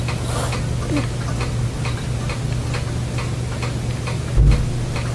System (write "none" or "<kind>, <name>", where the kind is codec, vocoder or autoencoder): none